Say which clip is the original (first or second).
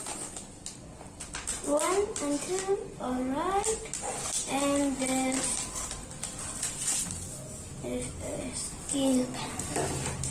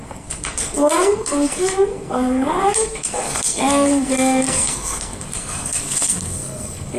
first